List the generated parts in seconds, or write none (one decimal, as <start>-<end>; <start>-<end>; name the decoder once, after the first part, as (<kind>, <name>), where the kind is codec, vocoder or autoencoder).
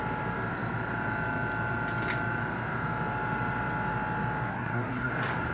4.5-5.1 (codec, SNAC)